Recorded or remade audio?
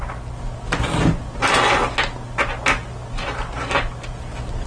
recorded